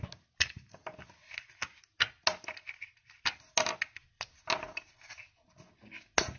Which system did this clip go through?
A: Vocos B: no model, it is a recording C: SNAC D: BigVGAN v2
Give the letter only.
B